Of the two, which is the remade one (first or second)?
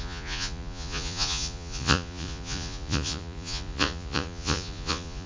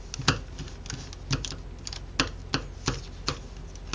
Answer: first